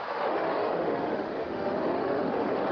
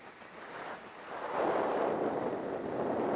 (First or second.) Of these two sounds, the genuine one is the second